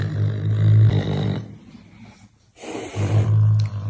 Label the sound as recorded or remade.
recorded